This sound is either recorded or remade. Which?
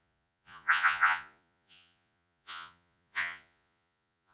remade